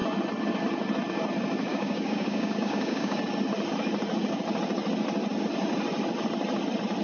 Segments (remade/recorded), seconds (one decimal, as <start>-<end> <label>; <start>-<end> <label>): 0.0-1.7 recorded; 1.7-3.2 remade; 3.2-7.0 recorded